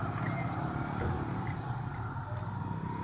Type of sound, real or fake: real